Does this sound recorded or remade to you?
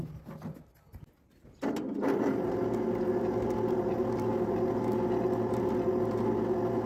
recorded